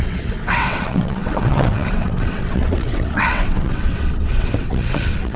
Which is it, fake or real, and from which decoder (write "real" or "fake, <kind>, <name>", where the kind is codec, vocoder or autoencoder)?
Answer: fake, vocoder, WaveNeXt